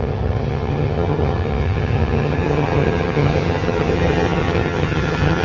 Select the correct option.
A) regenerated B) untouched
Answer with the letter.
A